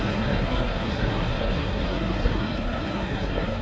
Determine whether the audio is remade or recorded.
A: remade